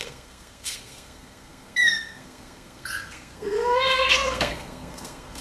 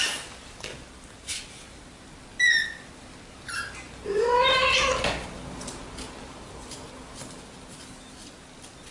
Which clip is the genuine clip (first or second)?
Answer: second